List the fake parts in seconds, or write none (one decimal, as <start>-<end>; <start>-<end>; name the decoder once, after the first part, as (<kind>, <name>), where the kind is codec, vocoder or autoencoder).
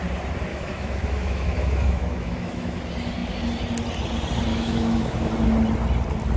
0.5-2.8 (autoencoder, DAC-VAE); 4.5-5.3